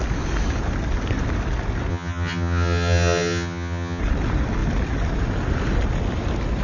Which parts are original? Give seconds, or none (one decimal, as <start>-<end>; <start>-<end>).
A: 0.0-1.9; 4.0-6.6